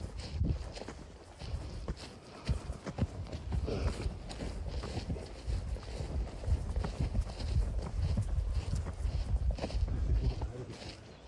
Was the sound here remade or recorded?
recorded